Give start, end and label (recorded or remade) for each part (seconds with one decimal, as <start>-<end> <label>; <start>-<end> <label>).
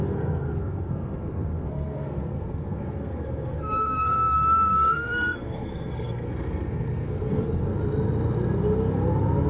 0.0-7.7 remade; 7.7-9.5 recorded